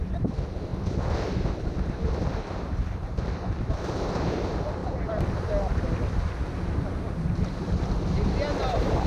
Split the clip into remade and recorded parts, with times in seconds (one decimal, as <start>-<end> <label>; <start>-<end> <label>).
0.0-0.7 remade; 0.7-1.5 recorded; 1.5-4.8 remade; 4.8-8.6 recorded; 8.6-9.1 remade